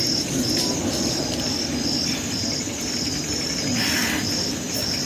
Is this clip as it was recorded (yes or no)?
yes